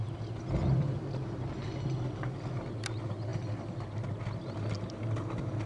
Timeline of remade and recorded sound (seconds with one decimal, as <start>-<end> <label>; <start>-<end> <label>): 0.0-5.7 recorded